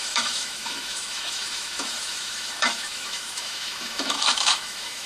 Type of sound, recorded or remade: remade